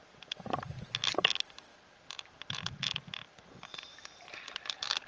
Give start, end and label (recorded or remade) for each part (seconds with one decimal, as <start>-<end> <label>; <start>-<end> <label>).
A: 0.0-5.1 recorded